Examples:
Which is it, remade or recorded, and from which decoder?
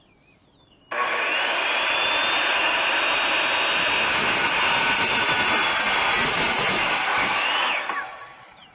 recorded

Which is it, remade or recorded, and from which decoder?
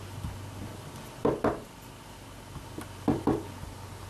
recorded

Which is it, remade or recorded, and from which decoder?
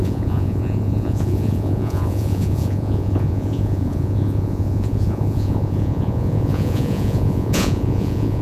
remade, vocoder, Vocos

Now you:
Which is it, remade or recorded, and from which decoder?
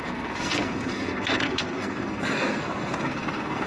remade, codec, SNAC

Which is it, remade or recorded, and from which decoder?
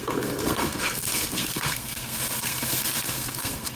remade, codec, SNAC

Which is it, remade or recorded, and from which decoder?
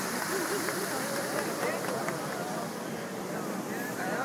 remade, vocoder, BigVGAN v2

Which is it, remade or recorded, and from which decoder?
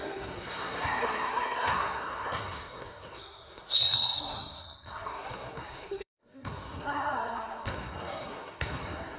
remade, codec, SNAC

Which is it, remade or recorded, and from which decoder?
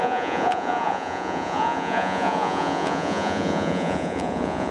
remade, vocoder, Vocos